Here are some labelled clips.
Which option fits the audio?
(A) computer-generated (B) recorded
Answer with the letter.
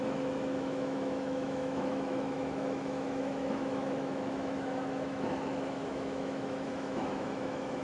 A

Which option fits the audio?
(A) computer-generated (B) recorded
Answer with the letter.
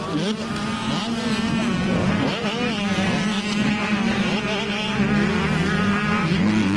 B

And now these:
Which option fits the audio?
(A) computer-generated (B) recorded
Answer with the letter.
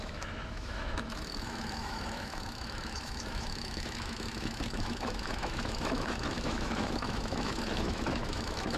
A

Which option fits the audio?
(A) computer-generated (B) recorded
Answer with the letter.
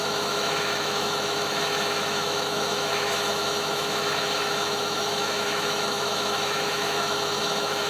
A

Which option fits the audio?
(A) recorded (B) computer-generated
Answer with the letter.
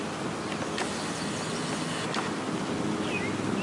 A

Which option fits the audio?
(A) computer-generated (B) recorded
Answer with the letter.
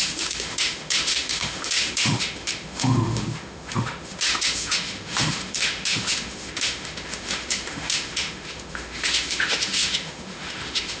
A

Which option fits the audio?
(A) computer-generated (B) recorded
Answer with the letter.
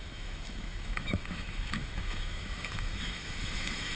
A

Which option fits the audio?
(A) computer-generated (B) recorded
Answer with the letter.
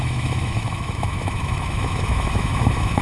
A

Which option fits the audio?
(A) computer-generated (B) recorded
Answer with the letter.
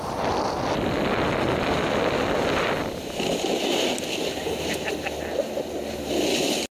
B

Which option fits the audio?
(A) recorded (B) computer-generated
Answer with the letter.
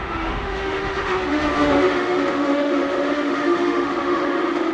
B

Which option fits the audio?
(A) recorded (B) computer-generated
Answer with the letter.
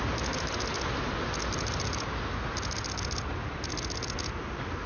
A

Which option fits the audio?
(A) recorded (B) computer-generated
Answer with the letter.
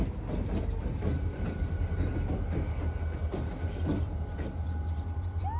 A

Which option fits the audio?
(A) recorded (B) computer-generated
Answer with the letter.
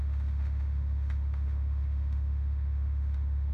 B